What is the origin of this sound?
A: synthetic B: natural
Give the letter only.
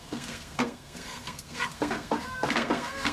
A